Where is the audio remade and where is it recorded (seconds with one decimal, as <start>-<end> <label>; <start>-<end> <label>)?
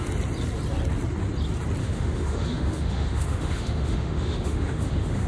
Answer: 0.0-1.8 recorded; 1.8-5.3 remade